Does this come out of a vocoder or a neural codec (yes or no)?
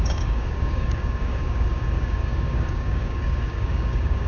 yes